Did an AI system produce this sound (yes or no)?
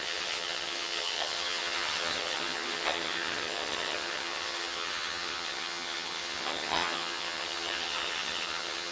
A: yes